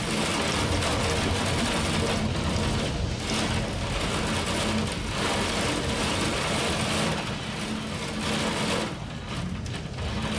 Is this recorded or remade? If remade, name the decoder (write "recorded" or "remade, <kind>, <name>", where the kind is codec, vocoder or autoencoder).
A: recorded